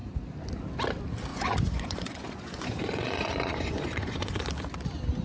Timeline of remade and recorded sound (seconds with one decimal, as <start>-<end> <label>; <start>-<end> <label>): 0.0-1.3 recorded; 1.3-4.4 remade; 4.4-5.2 recorded